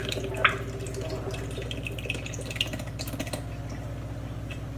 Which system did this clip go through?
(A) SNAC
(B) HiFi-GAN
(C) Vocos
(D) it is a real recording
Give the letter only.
D